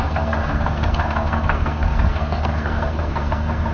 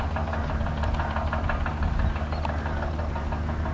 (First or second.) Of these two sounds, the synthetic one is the first